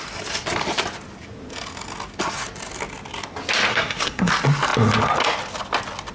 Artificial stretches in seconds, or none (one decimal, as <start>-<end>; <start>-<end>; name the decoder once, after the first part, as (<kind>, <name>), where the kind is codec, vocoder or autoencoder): 3.7-4.3 (codec, SNAC)